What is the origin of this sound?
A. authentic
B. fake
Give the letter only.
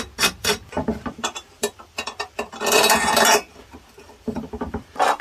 B